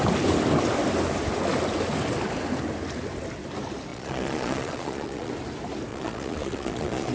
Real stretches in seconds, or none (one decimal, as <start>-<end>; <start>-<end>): 0.0-3.9; 5.3-5.9